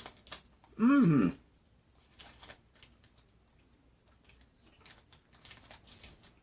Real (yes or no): yes